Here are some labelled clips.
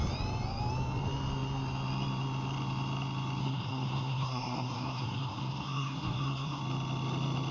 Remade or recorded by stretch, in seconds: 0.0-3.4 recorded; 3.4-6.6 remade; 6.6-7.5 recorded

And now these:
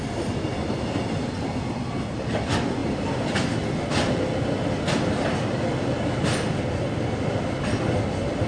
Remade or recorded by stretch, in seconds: 0.0-8.5 recorded